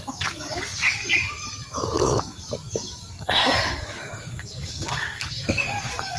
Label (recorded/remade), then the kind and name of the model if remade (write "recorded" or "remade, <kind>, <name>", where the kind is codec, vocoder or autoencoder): remade, codec, DAC